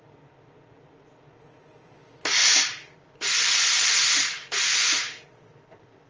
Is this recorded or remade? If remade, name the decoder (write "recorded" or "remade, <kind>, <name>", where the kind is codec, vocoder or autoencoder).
recorded